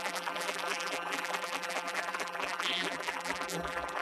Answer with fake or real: fake